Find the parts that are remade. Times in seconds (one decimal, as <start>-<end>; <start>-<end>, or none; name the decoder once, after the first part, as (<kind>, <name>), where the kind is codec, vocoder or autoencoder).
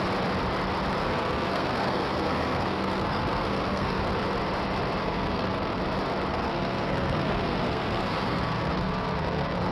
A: 1.0-4.0 (codec, SNAC); 5.0-5.8; 6.3-9.7